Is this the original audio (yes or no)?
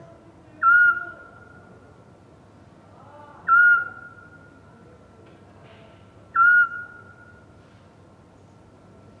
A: yes